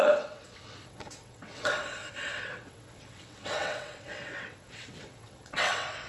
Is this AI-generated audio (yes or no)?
yes